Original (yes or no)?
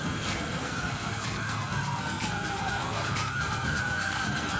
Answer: no